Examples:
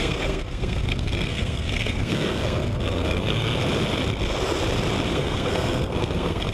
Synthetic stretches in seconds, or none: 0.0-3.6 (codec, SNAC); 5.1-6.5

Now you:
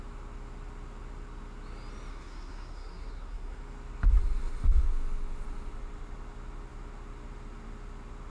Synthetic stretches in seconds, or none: 2.1-3.6 (codec, SNAC)

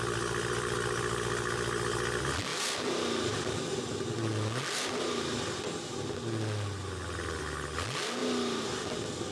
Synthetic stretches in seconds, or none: none

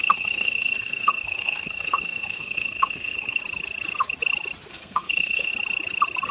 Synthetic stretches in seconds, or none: 0.0-3.4 (codec, SNAC); 4.7-5.5

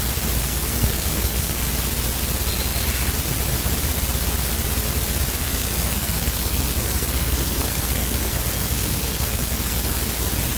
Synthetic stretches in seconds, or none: 0.4-1.7 (codec, SNAC); 5.4-10.0

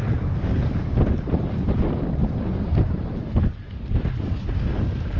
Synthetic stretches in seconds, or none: none

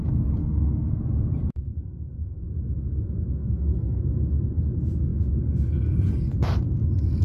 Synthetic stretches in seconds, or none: 0.4-1.0 (codec, SNAC); 1.7-2.4; 3.4-4.0

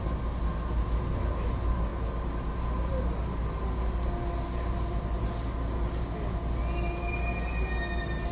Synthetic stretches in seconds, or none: none